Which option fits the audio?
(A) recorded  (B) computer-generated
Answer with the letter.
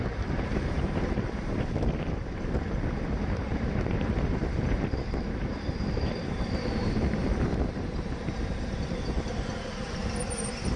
B